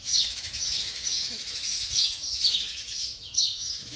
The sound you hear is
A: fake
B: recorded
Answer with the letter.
A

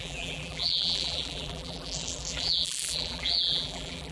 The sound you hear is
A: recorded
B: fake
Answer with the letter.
B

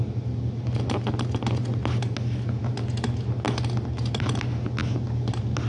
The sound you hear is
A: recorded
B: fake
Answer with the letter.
A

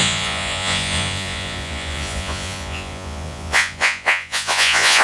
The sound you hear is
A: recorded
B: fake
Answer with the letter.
B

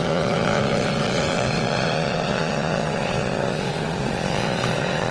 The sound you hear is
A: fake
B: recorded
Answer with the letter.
A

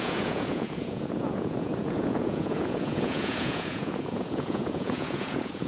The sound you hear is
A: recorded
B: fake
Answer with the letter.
B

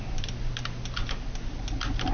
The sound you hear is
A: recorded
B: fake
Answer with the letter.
A